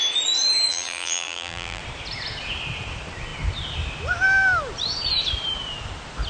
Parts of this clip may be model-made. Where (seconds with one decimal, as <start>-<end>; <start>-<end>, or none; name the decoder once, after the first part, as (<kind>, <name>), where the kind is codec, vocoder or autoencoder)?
0.7-1.8 (vocoder, BigVGAN v2)